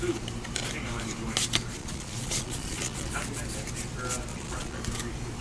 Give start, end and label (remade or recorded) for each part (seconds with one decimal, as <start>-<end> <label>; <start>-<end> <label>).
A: 0.0-1.8 recorded; 1.8-3.1 remade; 3.1-4.3 recorded; 4.3-4.8 remade; 4.8-5.4 recorded